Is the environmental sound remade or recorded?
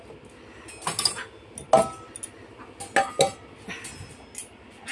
recorded